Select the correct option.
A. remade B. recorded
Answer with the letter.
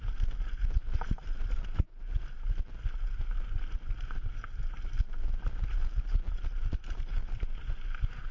B